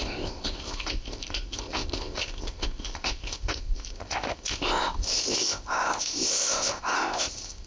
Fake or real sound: fake